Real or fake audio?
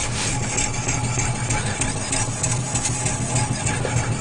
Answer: real